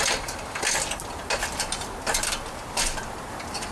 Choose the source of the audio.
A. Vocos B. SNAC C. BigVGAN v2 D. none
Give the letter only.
D